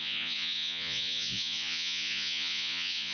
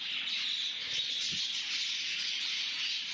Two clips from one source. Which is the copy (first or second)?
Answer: first